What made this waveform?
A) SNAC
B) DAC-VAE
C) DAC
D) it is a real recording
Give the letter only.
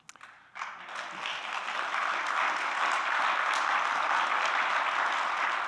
D